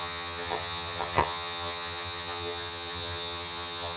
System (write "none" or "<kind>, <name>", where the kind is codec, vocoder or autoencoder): vocoder, HiFi-GAN